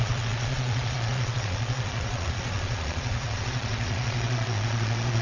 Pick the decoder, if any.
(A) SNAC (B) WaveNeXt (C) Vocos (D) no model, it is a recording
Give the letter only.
C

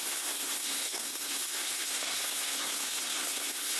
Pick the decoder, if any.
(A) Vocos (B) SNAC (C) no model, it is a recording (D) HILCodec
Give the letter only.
B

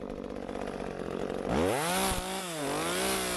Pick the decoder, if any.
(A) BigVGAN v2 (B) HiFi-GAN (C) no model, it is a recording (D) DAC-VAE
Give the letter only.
C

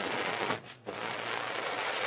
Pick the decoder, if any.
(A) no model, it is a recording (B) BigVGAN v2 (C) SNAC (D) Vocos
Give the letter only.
D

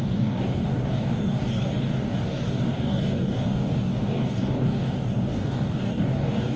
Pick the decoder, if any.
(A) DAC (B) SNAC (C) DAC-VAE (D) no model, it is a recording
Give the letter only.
A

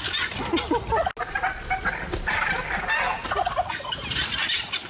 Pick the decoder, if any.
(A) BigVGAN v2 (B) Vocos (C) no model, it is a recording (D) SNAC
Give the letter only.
C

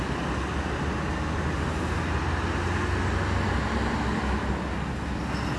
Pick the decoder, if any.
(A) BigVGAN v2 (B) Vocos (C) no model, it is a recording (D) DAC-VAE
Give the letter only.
C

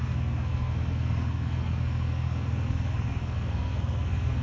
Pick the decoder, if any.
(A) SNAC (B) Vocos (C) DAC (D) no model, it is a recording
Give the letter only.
A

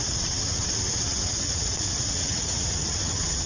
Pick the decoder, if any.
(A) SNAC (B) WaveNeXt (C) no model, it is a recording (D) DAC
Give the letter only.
B